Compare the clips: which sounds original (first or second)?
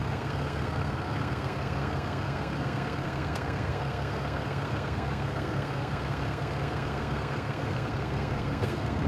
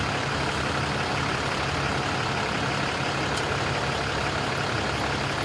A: second